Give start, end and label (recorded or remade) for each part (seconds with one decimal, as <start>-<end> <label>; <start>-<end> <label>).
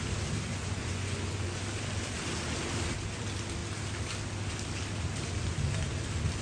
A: 0.0-0.5 recorded; 0.5-1.6 remade; 1.6-6.4 recorded